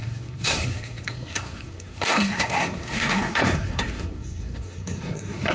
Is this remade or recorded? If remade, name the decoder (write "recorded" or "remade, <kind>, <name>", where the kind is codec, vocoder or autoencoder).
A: remade, codec, SNAC